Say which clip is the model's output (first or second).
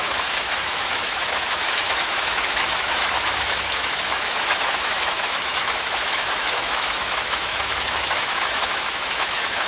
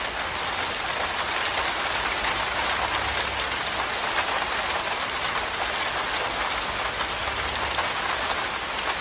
first